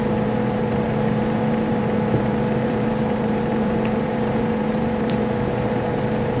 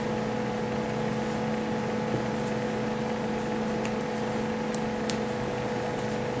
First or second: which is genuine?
second